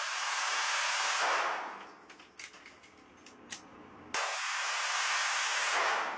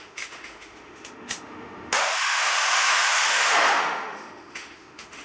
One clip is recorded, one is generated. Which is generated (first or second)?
second